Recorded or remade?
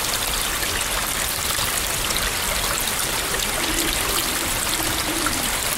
recorded